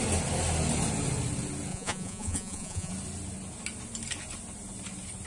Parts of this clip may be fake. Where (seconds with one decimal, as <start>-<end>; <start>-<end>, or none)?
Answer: 1.7-2.9